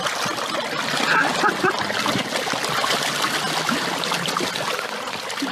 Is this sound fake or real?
real